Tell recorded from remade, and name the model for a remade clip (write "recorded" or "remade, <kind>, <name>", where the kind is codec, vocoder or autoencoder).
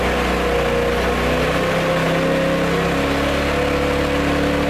recorded